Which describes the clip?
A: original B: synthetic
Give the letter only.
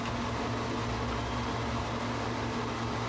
A